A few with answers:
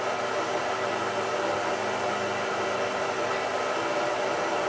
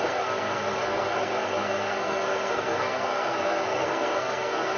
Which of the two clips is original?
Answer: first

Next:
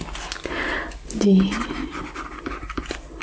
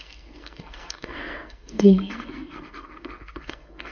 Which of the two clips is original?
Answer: first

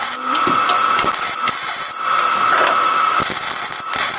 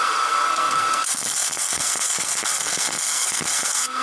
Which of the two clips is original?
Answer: first